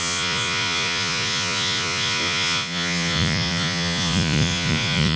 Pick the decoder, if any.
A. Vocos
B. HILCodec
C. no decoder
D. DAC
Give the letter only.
A